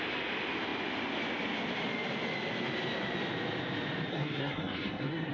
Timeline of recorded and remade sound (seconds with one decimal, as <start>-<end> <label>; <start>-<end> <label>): 0.0-4.1 recorded; 4.1-5.3 remade